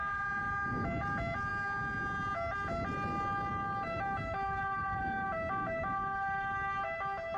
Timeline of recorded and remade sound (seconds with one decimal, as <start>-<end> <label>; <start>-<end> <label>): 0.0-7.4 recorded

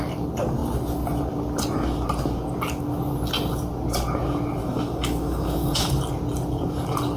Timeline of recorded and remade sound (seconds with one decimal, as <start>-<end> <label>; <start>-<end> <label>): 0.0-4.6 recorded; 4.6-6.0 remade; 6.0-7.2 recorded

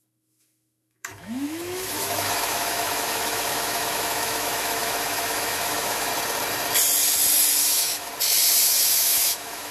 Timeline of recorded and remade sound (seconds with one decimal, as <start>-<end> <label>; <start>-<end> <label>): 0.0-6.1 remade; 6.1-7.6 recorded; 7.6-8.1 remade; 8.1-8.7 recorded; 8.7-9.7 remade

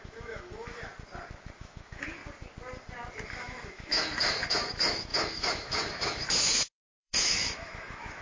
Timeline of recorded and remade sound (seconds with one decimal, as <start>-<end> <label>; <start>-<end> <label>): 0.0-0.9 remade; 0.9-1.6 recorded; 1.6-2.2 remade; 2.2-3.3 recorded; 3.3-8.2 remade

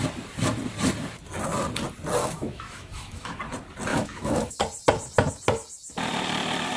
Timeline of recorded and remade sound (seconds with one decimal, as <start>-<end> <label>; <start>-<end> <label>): 0.0-2.2 recorded; 2.2-3.4 remade; 3.4-3.9 recorded; 3.9-4.6 remade; 4.6-6.8 recorded